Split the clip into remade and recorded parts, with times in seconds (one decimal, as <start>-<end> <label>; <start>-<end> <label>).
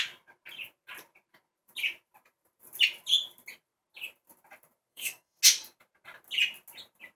0.0-4.9 recorded; 4.9-5.4 remade; 5.4-7.2 recorded